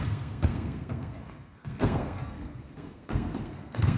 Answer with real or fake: fake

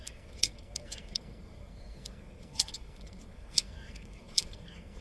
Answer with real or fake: fake